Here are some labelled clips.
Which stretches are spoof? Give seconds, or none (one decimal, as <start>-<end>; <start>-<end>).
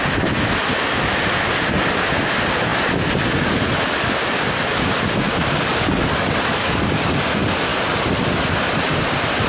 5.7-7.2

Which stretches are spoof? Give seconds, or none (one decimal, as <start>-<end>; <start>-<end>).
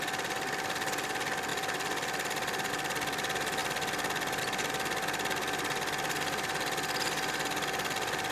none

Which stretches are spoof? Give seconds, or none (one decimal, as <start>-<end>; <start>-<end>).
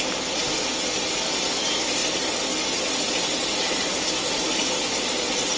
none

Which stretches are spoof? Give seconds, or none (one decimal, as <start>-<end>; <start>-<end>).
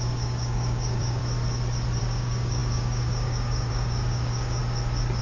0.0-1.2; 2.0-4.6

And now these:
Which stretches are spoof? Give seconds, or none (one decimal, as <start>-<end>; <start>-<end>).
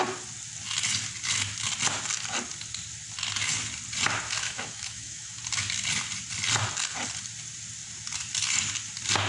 4.4-5.4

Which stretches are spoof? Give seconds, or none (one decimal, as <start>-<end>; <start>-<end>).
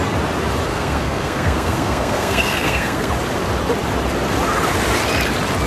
0.7-3.1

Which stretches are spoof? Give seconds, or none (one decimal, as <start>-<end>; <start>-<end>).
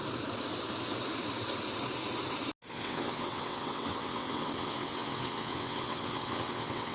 2.7-6.9